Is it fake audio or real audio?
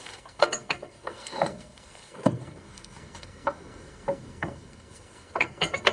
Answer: fake